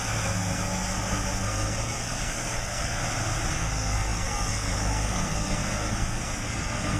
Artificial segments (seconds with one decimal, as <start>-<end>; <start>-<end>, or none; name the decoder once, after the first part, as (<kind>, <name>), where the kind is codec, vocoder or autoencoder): 0.0-3.0 (codec, SNAC); 3.5-7.0